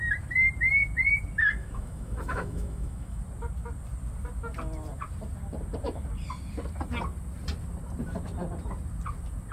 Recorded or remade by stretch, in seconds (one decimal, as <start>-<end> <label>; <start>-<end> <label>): 0.0-1.6 recorded; 1.6-3.2 remade; 3.2-9.5 recorded